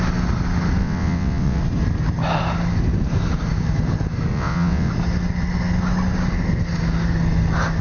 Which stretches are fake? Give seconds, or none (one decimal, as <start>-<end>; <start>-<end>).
0.8-1.6; 4.3-4.9